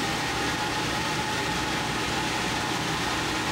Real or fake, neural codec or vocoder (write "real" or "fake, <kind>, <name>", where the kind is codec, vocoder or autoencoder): real